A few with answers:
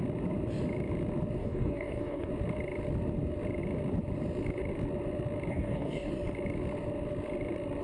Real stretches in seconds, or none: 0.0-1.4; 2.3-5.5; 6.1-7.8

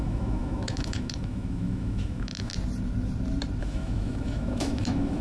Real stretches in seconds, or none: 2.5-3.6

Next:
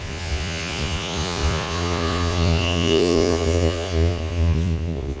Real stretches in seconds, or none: none

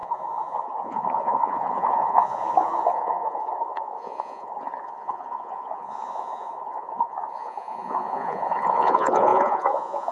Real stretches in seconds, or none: none